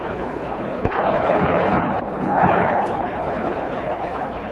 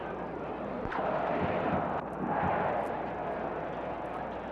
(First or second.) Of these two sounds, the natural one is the second